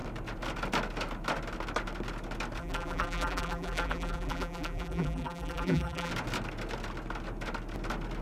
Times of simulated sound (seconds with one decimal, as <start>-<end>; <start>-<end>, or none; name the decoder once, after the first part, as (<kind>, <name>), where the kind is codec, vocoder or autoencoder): 2.6-6.1 (vocoder, BigVGAN v2)